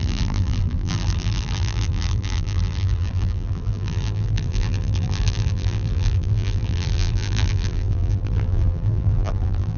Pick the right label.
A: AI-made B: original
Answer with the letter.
A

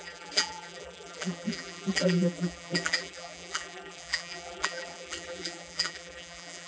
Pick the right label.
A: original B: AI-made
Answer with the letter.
B